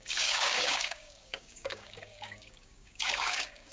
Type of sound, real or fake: fake